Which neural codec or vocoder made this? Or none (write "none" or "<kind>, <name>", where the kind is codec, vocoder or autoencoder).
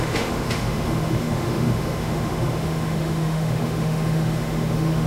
autoencoder, DAC-VAE